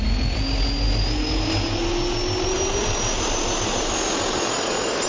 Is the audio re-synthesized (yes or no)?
no